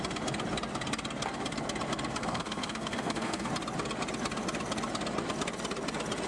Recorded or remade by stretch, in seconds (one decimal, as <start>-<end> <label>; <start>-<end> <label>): 0.0-2.2 recorded; 2.2-3.5 remade; 3.5-6.3 recorded